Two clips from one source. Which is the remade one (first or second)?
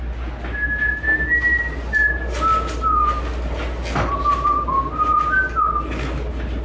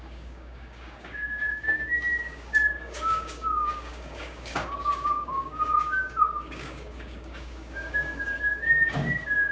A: second